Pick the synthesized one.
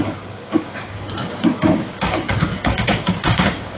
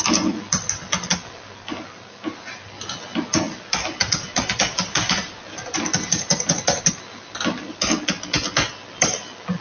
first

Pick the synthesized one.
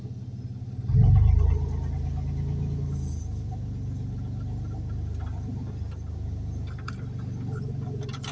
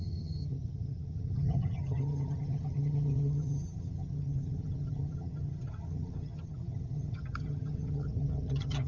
second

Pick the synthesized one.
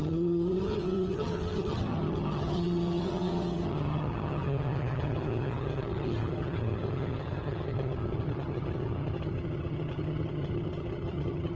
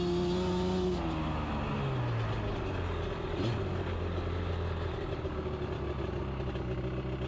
first